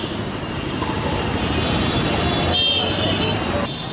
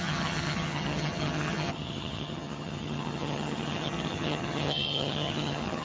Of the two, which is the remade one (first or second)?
second